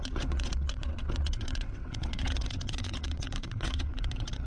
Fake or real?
fake